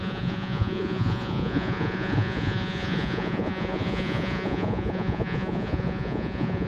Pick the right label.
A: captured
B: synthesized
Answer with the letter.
B